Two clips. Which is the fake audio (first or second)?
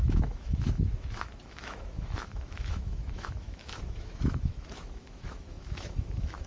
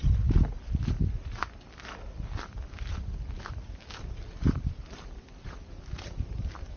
first